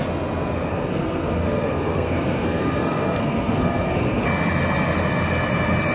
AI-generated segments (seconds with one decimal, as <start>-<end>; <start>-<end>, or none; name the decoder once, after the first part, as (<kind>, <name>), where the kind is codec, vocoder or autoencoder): 0.7-4.2 (codec, SNAC)